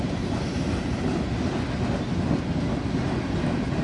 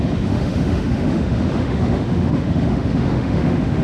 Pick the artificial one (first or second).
second